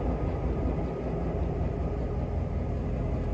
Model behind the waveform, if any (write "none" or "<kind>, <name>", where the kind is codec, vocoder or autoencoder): none